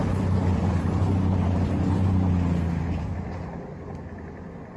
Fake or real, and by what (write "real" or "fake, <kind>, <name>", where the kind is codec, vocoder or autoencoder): real